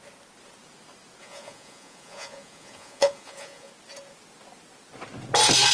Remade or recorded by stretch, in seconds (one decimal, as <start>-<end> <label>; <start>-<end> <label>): 0.0-1.2 recorded; 1.2-3.7 remade; 3.7-5.7 recorded